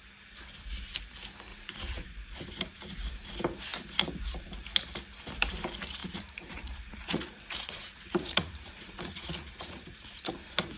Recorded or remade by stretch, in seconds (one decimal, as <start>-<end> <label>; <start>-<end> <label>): 0.0-1.5 recorded; 1.5-2.4 remade; 2.4-6.0 recorded; 6.0-10.3 remade; 10.3-10.8 recorded